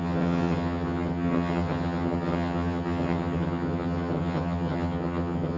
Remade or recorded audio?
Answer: remade